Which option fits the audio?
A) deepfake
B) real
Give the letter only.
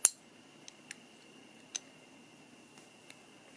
B